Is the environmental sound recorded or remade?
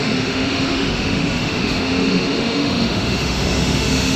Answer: remade